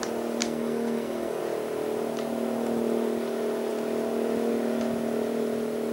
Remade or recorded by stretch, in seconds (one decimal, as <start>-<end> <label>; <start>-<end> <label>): 0.0-0.4 recorded; 0.4-1.4 remade; 1.4-5.9 recorded